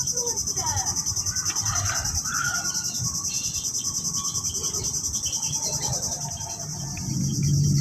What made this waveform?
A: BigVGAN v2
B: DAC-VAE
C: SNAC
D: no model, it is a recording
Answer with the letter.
D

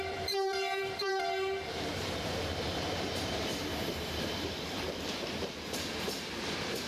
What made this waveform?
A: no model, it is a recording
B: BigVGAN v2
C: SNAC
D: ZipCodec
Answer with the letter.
B